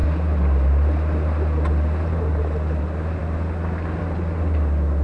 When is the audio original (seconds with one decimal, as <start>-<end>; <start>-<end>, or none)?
0.0-5.0

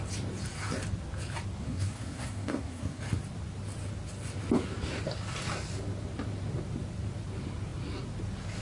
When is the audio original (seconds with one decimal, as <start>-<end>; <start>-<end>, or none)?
0.0-1.6; 3.0-8.6

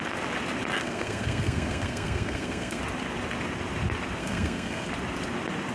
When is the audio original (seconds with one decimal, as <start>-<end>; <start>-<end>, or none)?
0.0-0.8; 2.8-4.2; 4.9-5.7

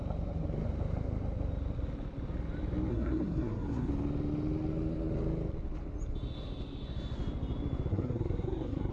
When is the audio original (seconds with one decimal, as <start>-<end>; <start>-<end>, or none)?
0.0-2.9; 3.9-7.9

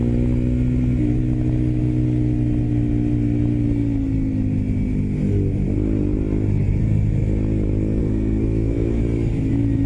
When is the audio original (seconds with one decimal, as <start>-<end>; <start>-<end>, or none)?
0.0-8.0; 9.0-9.9

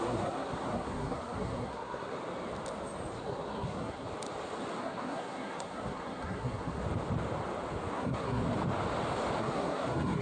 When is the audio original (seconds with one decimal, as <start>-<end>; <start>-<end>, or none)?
2.2-3.2; 4.1-4.8; 6.8-7.9; 8.4-9.4

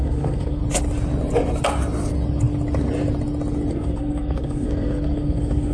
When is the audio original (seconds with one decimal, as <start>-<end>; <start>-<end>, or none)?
0.6-3.7

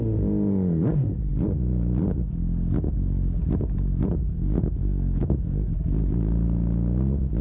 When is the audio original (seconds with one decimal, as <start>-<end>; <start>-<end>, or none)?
0.0-4.3; 5.7-7.4